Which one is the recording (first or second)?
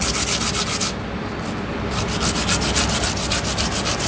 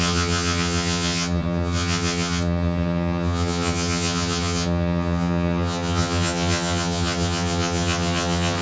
first